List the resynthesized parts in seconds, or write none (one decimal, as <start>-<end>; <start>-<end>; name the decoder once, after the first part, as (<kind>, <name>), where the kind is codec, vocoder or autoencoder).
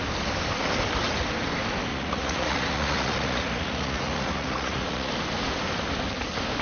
1.9-5.1 (vocoder, Vocos)